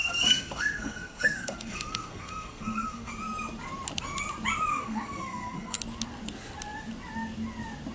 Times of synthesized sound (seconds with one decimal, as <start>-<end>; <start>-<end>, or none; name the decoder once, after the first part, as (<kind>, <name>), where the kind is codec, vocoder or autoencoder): 0.0-3.1 (codec, SNAC); 4.7-5.8